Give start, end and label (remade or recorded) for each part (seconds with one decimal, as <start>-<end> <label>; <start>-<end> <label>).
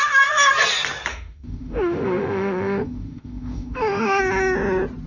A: 0.0-0.5 remade; 0.5-1.1 recorded; 1.1-4.2 remade; 4.2-5.1 recorded